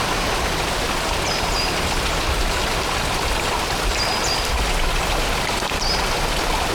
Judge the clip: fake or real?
real